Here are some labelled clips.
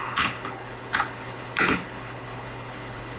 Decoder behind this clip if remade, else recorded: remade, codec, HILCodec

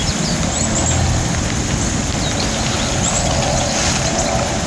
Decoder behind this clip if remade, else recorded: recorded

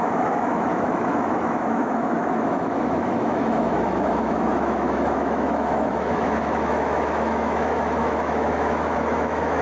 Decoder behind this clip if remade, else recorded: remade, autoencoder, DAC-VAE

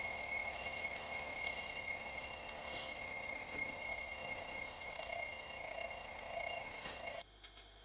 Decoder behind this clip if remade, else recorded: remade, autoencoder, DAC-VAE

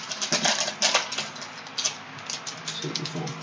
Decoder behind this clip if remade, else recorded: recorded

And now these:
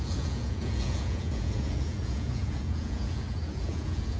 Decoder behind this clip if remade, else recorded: remade, vocoder, Vocos